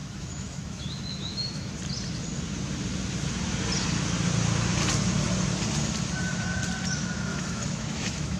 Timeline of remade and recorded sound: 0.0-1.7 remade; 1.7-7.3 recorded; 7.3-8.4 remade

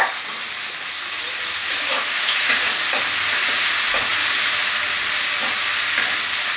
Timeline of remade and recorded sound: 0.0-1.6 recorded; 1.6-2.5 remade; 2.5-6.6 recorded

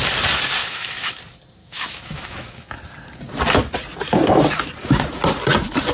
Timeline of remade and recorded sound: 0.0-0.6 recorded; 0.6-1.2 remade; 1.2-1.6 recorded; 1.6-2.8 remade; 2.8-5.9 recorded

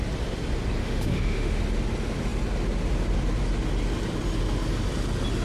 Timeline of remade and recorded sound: 0.0-0.8 recorded; 0.8-1.6 remade; 1.6-5.4 recorded

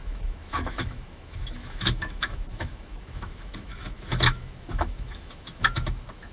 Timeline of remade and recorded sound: 0.0-6.3 remade